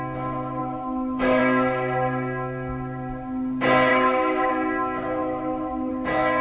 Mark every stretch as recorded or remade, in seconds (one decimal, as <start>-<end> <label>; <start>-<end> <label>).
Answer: 0.0-0.6 recorded; 0.6-1.4 remade; 1.4-3.9 recorded; 3.9-4.5 remade; 4.5-5.2 recorded; 5.2-5.9 remade; 5.9-6.4 recorded